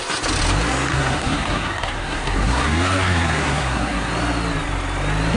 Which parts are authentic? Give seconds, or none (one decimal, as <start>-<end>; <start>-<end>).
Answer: 0.0-0.9; 4.1-5.4